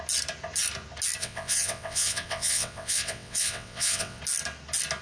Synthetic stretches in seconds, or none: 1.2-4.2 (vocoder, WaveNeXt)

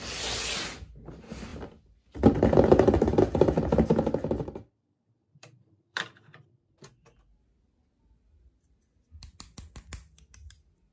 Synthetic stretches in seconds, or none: 1.5-3.4 (vocoder, BigVGAN v2); 5.4-6.6

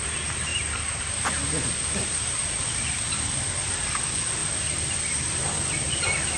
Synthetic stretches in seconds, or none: none

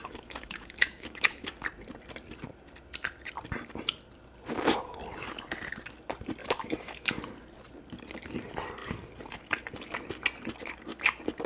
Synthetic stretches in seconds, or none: 0.0-1.5 (autoencoder, DAC-VAE); 6.4-7.2

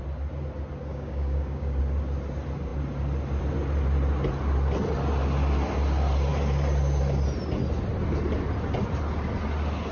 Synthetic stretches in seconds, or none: 0.9-1.8 (codec, DAC)

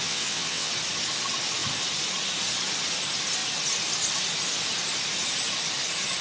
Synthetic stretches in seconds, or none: 0.0-0.7 (vocoder, WaveNeXt)